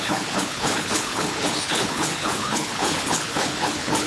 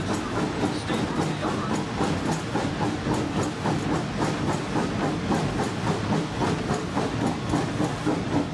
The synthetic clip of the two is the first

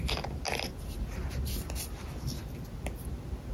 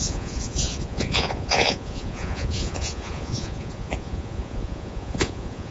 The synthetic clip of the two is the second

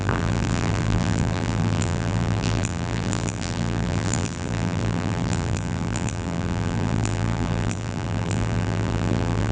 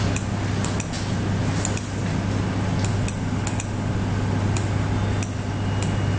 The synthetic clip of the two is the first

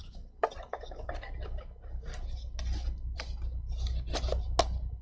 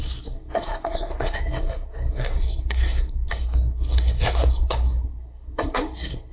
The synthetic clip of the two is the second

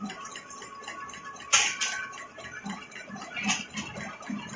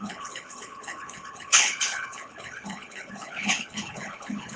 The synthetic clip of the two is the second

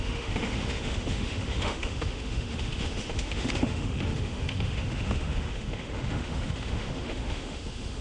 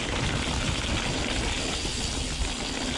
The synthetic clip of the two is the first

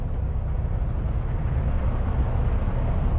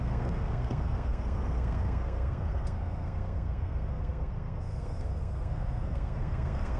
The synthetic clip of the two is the second